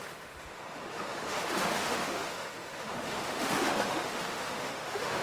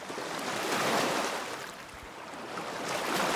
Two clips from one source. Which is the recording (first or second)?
second